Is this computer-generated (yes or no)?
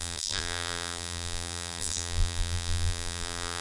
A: yes